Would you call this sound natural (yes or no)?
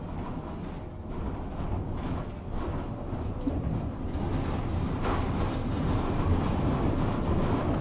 yes